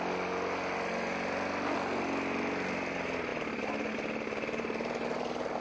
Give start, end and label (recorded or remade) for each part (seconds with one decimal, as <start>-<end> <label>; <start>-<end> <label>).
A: 0.0-5.6 recorded